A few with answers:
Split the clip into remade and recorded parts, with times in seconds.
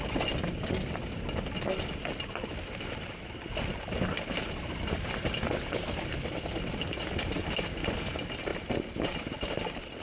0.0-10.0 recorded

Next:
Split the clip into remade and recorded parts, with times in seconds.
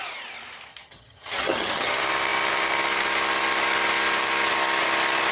0.0-0.7 recorded; 0.7-1.9 remade; 1.9-5.3 recorded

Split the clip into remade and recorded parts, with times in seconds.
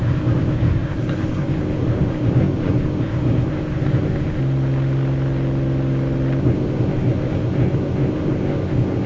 0.0-4.4 remade; 4.4-6.4 recorded; 6.4-9.1 remade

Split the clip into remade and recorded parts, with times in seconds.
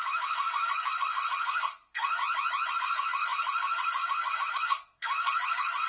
0.0-2.2 remade; 2.2-2.7 recorded; 2.7-5.9 remade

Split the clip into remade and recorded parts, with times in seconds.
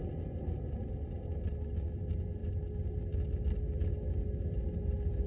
0.0-5.3 recorded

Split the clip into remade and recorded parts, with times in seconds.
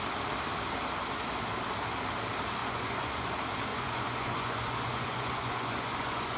0.0-2.6 recorded; 2.6-3.3 remade; 3.3-3.7 recorded; 3.7-6.4 remade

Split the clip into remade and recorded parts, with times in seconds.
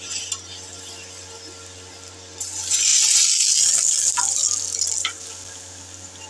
0.0-6.3 recorded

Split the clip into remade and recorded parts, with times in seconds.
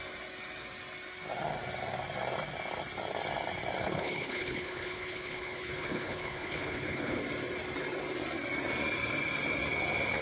0.0-3.8 recorded; 3.8-7.2 remade; 7.2-10.2 recorded